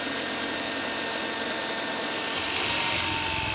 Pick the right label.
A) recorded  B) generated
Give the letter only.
A